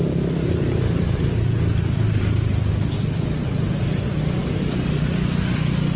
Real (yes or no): no